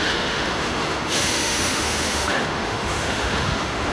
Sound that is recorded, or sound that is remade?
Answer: remade